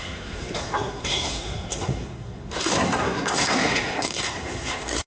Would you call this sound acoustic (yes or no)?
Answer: no